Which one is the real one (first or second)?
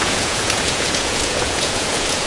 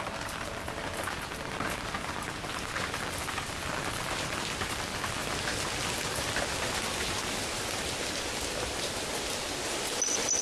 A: second